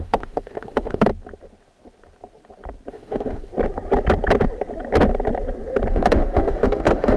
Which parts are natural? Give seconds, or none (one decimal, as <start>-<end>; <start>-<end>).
1.1-2.9; 3.5-5.9